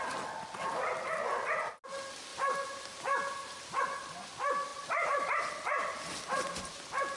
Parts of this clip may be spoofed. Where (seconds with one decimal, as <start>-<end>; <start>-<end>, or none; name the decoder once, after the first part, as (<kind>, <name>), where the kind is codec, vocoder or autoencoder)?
2.3-3.8 (vocoder, BigVGAN v2); 4.7-5.5